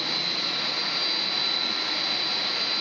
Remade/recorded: recorded